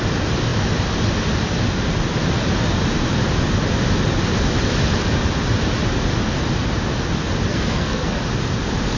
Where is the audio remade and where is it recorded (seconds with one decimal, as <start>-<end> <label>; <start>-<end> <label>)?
0.0-7.5 recorded; 7.5-8.2 remade; 8.2-9.0 recorded